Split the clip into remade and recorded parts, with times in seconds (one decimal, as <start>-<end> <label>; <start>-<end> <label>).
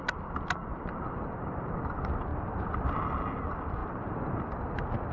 0.0-0.6 recorded; 0.6-1.8 remade; 1.8-2.3 recorded; 2.3-3.2 remade; 3.2-3.8 recorded; 3.8-4.4 remade; 4.4-5.1 recorded